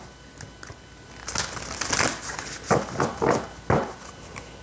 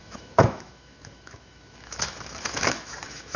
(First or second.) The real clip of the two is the first